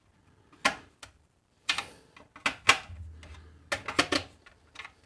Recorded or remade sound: recorded